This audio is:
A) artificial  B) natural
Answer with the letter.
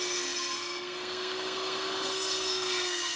A